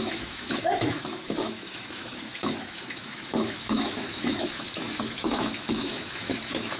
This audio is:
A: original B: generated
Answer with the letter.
B